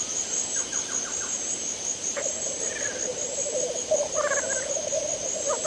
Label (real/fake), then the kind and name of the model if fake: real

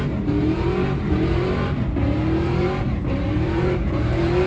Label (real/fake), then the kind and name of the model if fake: fake, vocoder, BigVGAN v2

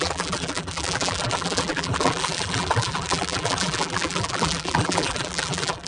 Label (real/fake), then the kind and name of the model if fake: fake, vocoder, BigVGAN v2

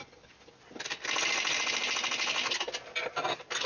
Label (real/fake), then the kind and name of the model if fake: real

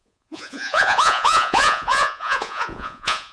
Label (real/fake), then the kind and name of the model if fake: fake, vocoder, Vocos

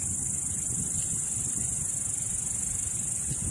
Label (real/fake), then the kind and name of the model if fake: real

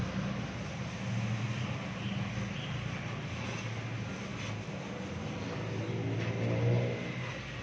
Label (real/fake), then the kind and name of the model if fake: real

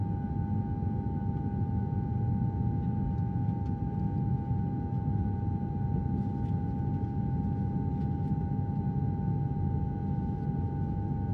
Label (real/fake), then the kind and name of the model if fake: real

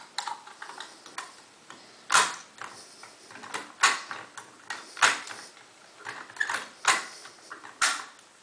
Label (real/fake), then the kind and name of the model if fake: real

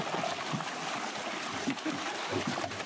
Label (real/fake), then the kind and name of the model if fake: real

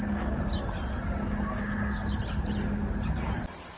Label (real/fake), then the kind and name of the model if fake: real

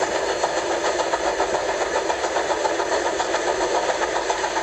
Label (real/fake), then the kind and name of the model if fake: real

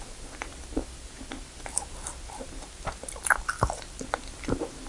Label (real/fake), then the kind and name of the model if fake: real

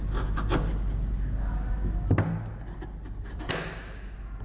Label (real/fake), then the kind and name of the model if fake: real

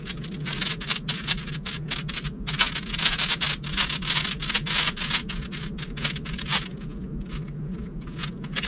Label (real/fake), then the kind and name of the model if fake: real